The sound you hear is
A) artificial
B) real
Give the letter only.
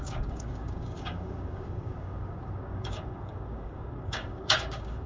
A